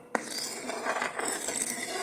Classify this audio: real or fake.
real